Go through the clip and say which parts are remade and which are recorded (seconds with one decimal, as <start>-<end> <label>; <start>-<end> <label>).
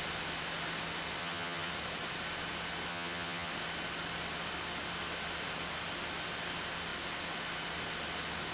0.0-1.2 recorded; 1.2-1.7 remade; 1.7-2.9 recorded; 2.9-3.5 remade; 3.5-8.5 recorded